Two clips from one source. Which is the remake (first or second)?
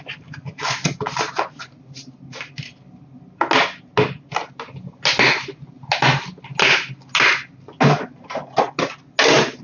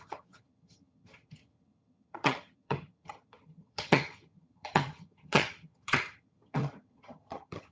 second